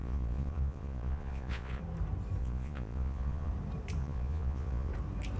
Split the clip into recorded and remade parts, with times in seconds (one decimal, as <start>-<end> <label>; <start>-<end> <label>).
0.0-1.8 remade; 1.8-2.4 recorded; 2.4-3.5 remade; 3.5-4.0 recorded; 4.0-4.9 remade; 4.9-5.4 recorded